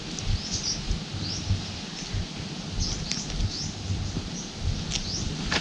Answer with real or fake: real